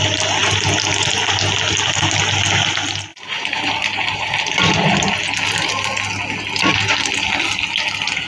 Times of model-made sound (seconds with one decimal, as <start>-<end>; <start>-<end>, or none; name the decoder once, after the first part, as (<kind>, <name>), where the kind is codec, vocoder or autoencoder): 3.1-5.1 (vocoder, BigVGAN v2)